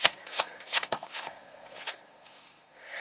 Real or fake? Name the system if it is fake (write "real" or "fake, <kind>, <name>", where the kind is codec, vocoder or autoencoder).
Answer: fake, codec, SNAC